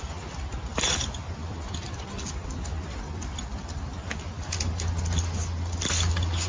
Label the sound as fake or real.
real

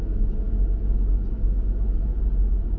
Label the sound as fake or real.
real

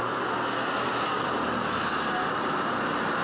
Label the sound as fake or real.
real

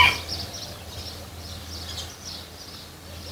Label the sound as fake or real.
real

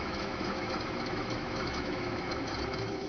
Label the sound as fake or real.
fake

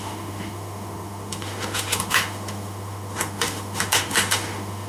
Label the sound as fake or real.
fake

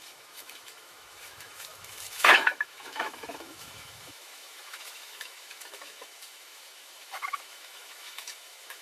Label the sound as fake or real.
fake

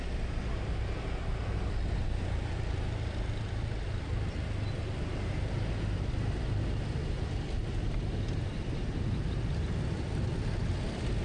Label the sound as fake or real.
real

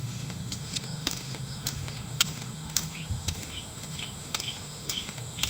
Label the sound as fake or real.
fake